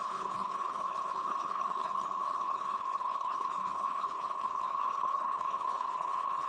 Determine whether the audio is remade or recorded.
remade